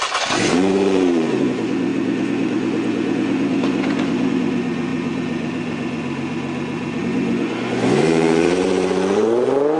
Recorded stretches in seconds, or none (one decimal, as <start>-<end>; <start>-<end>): none